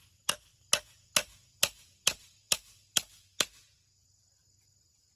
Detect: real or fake real